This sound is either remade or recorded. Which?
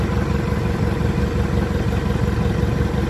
recorded